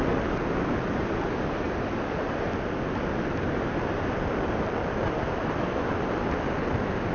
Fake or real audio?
real